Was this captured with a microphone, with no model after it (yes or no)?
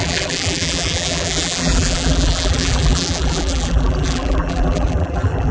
no